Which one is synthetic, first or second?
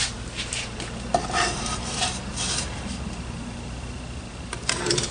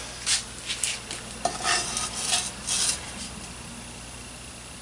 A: first